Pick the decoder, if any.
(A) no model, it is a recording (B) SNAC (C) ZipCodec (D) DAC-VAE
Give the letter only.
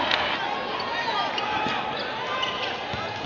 A